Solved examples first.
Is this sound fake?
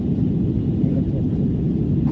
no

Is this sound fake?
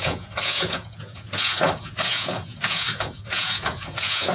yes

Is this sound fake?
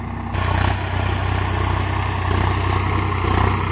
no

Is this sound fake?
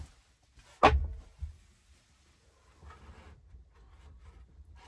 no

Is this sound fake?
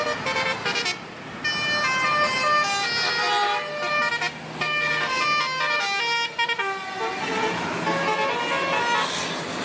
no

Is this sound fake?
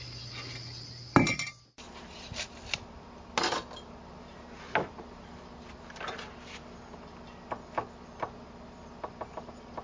no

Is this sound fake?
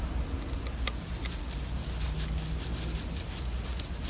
no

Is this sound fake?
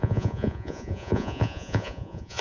yes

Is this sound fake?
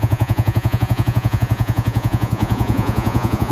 yes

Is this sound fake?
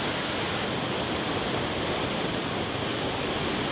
no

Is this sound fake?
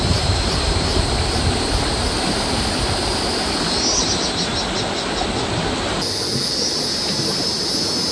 no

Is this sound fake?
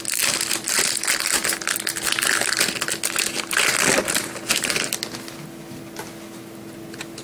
no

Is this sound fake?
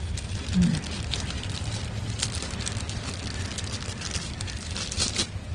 no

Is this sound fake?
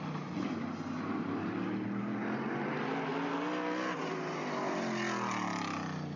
no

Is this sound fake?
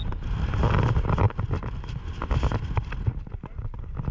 no